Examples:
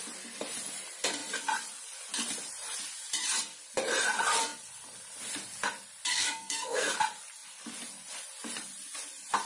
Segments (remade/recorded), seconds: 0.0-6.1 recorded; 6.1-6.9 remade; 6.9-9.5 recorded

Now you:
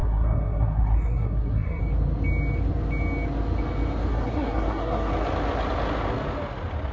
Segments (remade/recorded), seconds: 0.0-1.8 remade; 1.8-4.1 recorded; 4.1-5.1 remade; 5.1-6.9 recorded

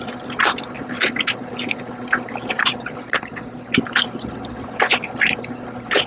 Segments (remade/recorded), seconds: 0.0-6.1 recorded

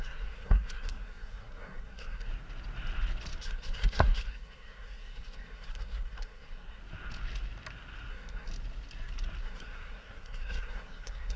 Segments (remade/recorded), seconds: 0.0-2.3 remade; 2.3-3.4 recorded; 3.4-6.8 remade; 6.8-8.1 recorded; 8.1-8.5 remade; 8.5-9.4 recorded; 9.4-11.4 remade

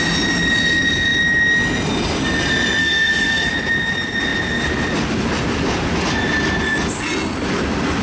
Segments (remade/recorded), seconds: 0.0-2.8 recorded; 2.8-3.5 remade; 3.5-8.0 recorded

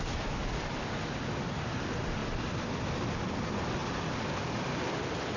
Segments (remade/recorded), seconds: 0.0-5.4 recorded

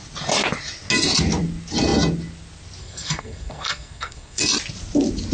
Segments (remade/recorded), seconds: 0.0-2.8 recorded; 2.8-4.4 remade; 4.4-5.3 recorded